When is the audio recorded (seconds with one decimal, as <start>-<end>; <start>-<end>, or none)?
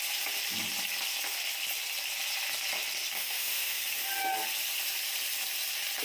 0.0-3.2; 3.8-6.0